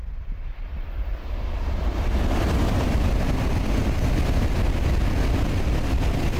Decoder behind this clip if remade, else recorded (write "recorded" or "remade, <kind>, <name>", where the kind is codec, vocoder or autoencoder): recorded